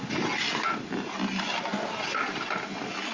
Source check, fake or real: real